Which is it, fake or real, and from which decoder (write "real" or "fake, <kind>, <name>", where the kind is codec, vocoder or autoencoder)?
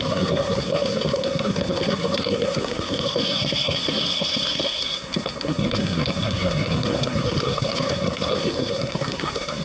fake, codec, SNAC